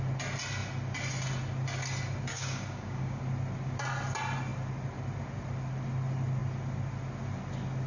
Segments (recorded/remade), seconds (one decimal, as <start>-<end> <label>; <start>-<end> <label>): 0.0-2.3 recorded; 2.3-3.2 remade; 3.2-7.9 recorded